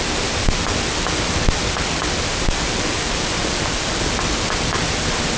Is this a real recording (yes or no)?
no